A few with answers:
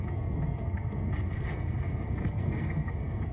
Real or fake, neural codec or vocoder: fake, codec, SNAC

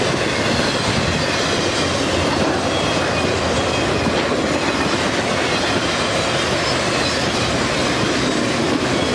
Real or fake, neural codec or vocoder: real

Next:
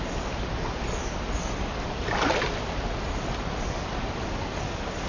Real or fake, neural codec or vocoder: real